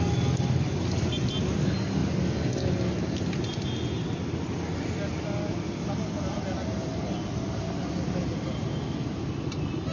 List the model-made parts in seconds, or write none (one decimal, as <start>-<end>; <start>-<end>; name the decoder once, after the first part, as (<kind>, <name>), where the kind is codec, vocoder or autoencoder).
none